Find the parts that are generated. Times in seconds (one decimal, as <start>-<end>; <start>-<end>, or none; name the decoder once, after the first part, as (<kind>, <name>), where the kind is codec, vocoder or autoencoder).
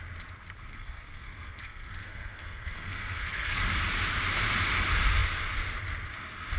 0.7-3.6 (codec, SNAC)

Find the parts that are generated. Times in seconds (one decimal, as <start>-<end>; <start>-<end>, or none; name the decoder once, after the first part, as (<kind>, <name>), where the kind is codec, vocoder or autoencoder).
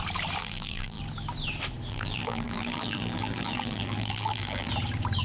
0.4-1.0 (vocoder, BigVGAN v2); 1.9-4.7